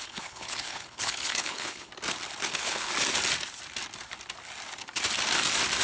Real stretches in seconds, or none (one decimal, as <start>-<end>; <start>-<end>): 1.9-2.5; 2.9-5.8